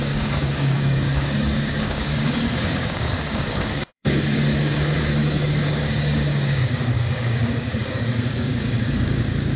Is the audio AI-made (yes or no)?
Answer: yes